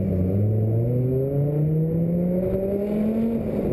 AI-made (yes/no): no